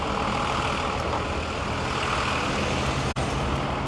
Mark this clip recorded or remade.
recorded